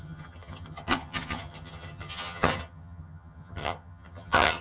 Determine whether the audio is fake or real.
fake